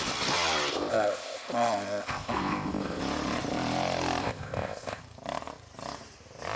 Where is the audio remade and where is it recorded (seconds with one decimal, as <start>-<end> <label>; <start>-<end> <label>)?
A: 0.0-0.7 recorded; 0.7-3.0 remade; 3.0-4.2 recorded; 4.2-5.0 remade; 5.0-6.6 recorded